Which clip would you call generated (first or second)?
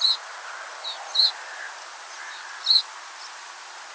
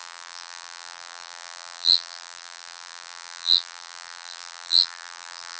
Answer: second